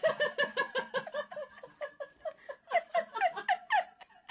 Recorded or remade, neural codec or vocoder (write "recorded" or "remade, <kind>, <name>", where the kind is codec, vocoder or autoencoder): recorded